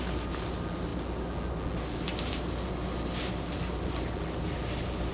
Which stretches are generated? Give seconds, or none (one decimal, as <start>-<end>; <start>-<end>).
none